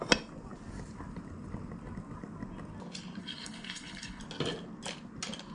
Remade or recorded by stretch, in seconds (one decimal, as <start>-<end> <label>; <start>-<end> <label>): 0.0-3.2 recorded; 3.2-4.2 remade; 4.2-5.5 recorded